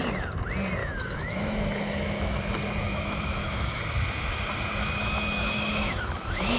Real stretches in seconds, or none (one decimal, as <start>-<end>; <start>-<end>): 0.0-0.8; 2.4-2.8; 3.8-4.8